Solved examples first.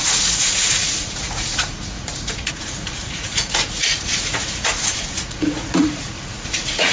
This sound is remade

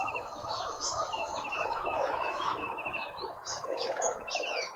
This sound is remade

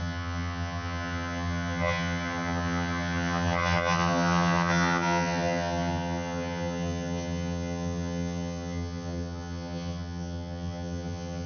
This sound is remade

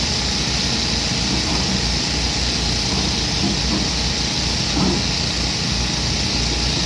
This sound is recorded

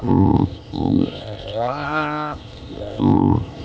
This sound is remade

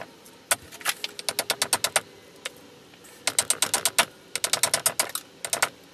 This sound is recorded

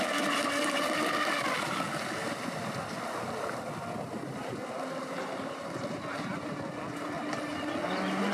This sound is recorded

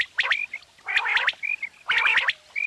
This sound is recorded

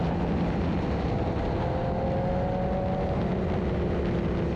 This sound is recorded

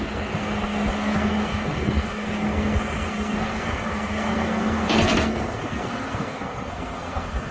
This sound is remade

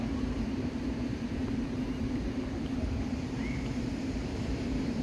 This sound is remade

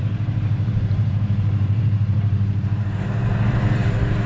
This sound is remade